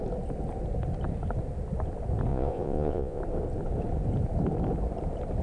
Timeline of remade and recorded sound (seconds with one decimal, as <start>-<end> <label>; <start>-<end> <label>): 0.0-2.3 recorded; 2.3-3.2 remade; 3.2-5.4 recorded